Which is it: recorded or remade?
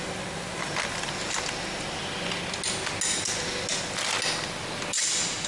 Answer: recorded